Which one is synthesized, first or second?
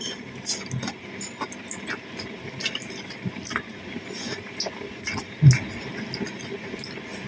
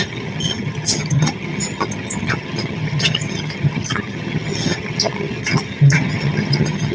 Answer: second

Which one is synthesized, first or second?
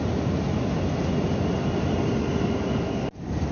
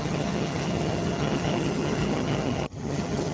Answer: second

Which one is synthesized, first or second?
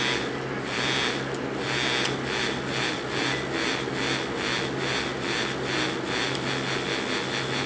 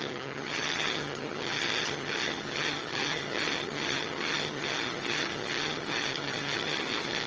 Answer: second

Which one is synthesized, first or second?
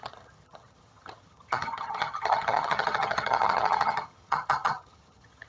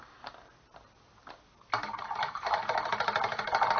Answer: first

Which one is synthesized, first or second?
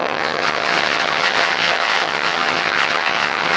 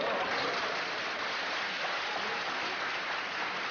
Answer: first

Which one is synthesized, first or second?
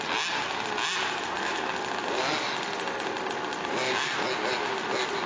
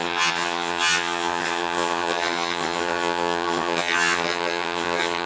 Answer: second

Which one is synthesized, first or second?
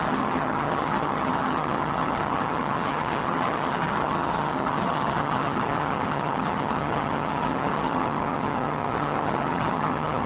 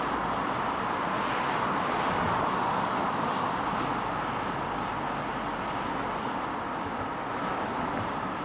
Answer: first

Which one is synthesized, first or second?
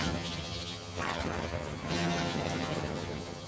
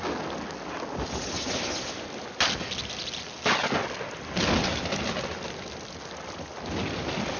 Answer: first